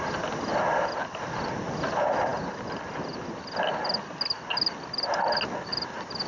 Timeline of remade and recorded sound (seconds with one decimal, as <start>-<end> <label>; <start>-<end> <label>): 0.0-6.3 recorded